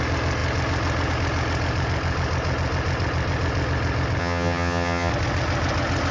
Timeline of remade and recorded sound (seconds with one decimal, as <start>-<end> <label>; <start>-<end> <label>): 0.0-4.2 recorded; 4.2-5.1 remade; 5.1-6.1 recorded